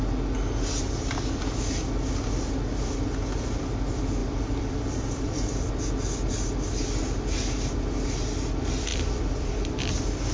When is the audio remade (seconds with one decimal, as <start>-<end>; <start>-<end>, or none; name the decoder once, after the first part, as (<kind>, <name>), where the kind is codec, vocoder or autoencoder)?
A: 4.2-5.7 (vocoder, BigVGAN v2); 8.9-9.8